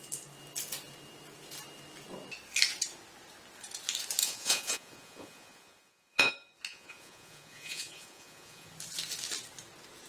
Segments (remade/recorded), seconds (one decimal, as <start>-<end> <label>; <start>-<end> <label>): 0.0-4.2 recorded; 4.2-6.3 remade; 6.3-6.7 recorded; 6.7-8.7 remade; 8.7-10.1 recorded